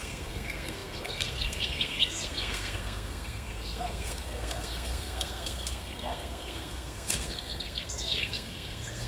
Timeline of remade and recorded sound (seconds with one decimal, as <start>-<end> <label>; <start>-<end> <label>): 0.0-9.1 remade